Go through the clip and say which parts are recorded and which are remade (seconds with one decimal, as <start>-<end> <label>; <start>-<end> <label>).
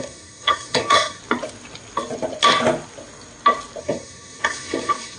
0.0-1.2 remade; 1.2-3.8 recorded; 3.8-5.2 remade